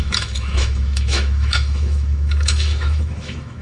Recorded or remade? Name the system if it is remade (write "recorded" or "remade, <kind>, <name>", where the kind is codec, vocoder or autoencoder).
remade, autoencoder, DAC-VAE